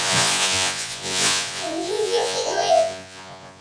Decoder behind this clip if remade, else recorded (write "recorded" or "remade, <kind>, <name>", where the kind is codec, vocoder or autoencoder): remade, vocoder, Vocos